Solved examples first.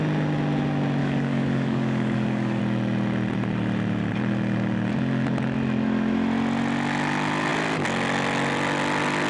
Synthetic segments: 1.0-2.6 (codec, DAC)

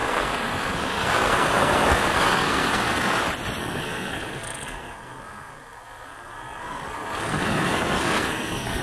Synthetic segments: 0.0-3.2 (codec, SNAC); 3.6-8.8

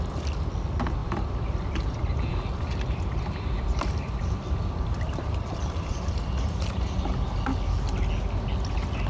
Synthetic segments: 1.0-5.9 (vocoder, BigVGAN v2)

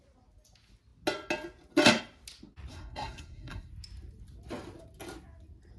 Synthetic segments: 2.7-3.7 (codec, SNAC)

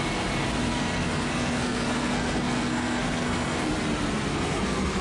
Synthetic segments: 0.7-3.7 (codec, SNAC); 4.3-5.0

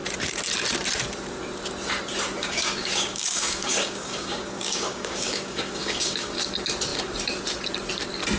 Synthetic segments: 2.4-6.5 (codec, DAC)

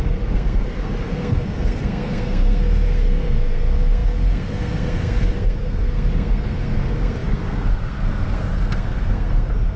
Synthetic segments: 0.0-9.8 (codec, SNAC)